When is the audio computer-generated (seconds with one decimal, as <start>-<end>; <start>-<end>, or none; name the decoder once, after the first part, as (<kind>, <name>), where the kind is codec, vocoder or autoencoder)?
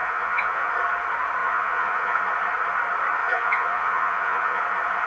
0.0-0.7 (vocoder, Vocos); 1.4-2.2; 3.2-4.6